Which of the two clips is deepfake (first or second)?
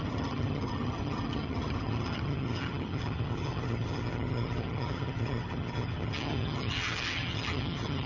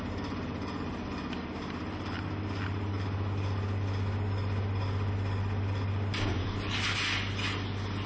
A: first